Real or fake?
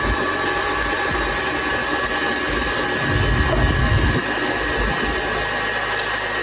real